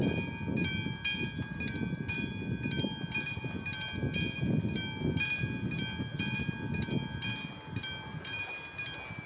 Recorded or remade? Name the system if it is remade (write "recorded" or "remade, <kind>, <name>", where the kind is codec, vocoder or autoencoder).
recorded